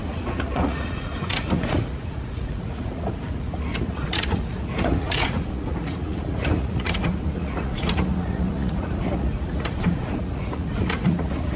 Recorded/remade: remade